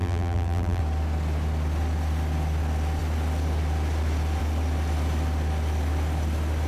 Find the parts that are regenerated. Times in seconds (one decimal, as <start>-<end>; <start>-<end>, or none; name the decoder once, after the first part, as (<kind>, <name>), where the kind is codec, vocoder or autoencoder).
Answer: 0.0-0.8 (vocoder, BigVGAN v2)